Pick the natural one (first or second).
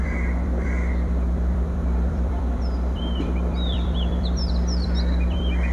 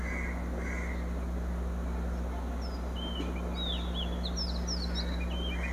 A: second